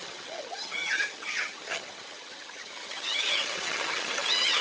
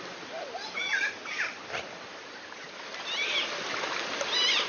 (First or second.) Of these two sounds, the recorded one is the second